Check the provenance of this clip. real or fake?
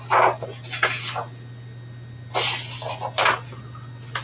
real